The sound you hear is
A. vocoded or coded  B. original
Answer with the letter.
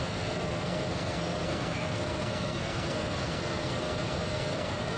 A